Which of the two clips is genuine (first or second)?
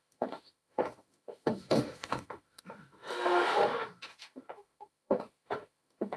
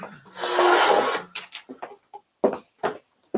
second